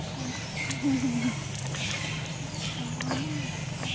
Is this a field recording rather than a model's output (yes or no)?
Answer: yes